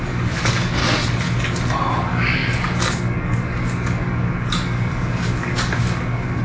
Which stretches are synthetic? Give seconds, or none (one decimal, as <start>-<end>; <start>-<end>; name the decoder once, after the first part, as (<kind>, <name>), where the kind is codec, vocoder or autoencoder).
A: 0.0-0.8 (codec, DAC); 2.0-6.4